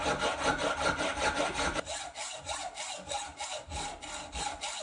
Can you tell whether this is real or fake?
real